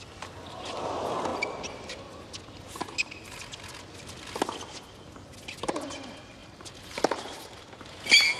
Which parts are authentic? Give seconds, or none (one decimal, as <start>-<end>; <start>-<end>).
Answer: 0.0-6.4; 7.6-8.4